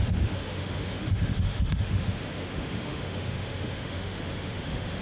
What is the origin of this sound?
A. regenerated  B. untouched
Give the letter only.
A